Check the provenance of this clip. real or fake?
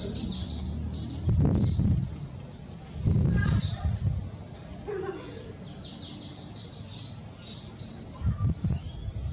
real